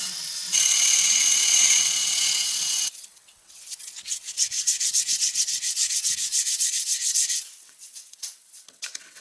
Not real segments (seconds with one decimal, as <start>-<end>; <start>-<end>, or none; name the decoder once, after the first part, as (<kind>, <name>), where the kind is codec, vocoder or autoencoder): 0.0-9.2 (vocoder, WaveNeXt)